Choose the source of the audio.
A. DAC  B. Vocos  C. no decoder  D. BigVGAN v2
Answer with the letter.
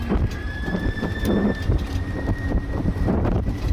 D